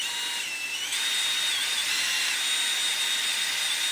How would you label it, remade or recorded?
recorded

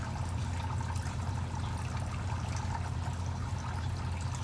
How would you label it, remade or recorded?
recorded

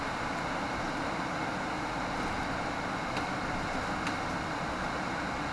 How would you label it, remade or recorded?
recorded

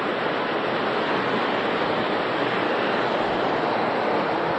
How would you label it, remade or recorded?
recorded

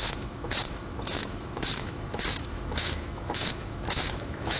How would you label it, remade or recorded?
remade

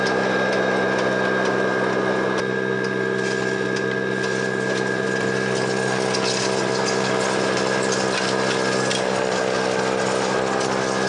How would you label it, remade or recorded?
recorded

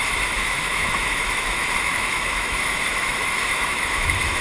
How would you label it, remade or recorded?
remade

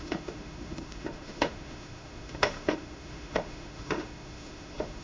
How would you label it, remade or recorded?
remade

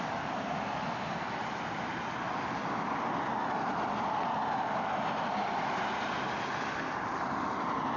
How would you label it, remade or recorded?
recorded